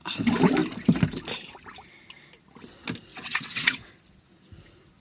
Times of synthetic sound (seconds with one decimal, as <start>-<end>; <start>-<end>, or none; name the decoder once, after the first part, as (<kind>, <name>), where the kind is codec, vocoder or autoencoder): 3.1-3.9 (vocoder, WaveNeXt)

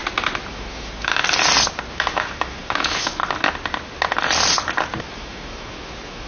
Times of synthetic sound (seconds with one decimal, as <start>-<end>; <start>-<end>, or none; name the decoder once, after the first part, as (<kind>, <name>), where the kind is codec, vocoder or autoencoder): 0.5-1.2 (autoencoder, DAC-VAE); 1.9-3.2; 5.0-6.3

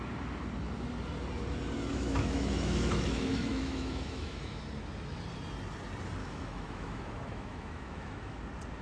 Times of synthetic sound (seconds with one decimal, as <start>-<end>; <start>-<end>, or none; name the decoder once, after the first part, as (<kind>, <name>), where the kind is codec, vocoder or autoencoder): 1.9-4.6 (autoencoder, DAC-VAE); 6.2-8.4

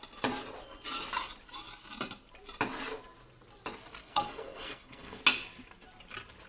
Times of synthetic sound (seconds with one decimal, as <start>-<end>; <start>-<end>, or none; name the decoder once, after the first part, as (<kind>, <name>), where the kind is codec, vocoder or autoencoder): 4.0-5.2 (codec, SNAC)

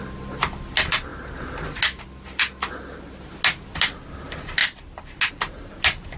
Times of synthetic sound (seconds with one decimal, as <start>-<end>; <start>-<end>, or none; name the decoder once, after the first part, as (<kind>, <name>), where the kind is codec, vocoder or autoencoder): none

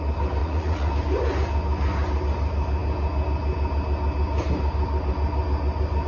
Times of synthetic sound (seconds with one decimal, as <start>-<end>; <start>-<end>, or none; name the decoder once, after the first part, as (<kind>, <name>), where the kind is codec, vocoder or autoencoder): 0.4-0.9 (vocoder, Vocos)